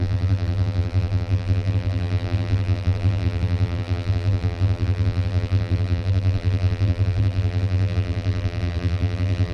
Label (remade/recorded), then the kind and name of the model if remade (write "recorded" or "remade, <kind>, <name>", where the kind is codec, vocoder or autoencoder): remade, vocoder, BigVGAN v2